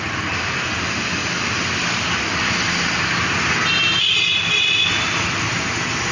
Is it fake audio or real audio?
real